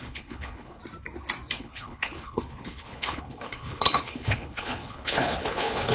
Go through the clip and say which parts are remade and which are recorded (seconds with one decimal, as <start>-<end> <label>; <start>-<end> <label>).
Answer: 0.0-0.8 remade; 0.8-1.6 recorded; 1.6-5.9 remade